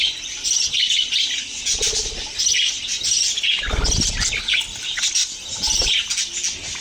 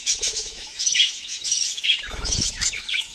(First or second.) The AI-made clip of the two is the second